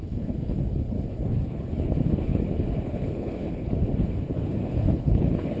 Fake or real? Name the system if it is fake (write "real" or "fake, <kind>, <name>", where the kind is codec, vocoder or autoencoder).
fake, codec, HILCodec